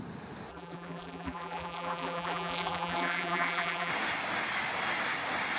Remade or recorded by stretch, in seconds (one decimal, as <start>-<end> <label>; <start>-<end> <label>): 0.0-0.5 recorded; 0.5-3.9 remade; 3.9-5.6 recorded